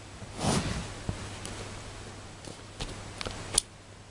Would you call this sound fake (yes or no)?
no